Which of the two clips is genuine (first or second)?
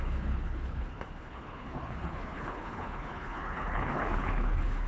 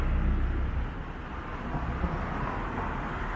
second